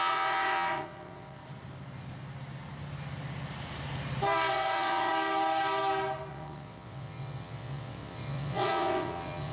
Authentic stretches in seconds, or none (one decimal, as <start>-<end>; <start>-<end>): 1.4-4.5; 5.1-6.3